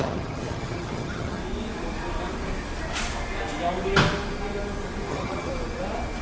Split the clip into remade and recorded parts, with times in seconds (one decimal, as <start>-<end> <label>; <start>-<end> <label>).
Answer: 0.0-1.4 remade; 1.4-5.1 recorded; 5.1-5.5 remade; 5.5-6.2 recorded